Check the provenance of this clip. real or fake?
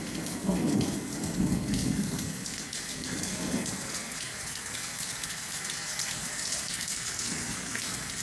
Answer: fake